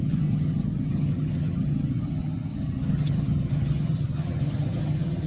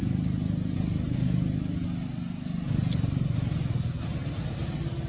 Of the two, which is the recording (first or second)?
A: second